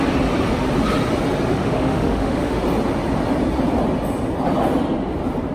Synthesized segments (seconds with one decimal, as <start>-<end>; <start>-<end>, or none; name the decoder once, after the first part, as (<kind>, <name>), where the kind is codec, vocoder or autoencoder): 1.5-2.6 (autoencoder, DAC-VAE)